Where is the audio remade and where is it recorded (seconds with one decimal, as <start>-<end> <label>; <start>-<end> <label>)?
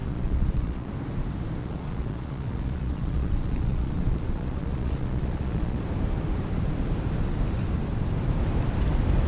0.0-0.9 remade; 0.9-1.6 recorded; 1.6-5.8 remade; 5.8-9.3 recorded